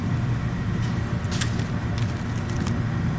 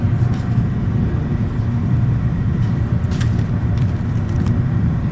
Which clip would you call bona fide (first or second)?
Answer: first